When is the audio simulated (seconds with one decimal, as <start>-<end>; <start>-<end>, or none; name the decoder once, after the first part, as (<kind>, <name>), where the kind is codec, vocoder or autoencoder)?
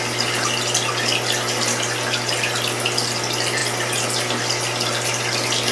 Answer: none